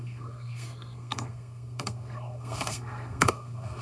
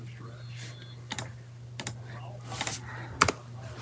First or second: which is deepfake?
first